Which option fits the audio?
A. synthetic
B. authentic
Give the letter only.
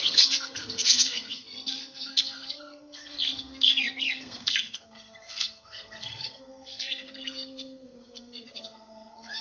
A